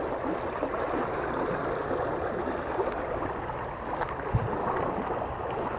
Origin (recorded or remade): recorded